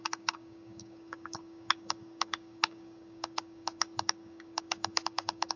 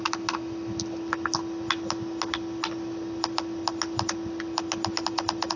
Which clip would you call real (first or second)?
second